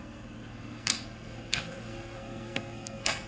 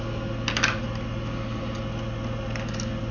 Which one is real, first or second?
second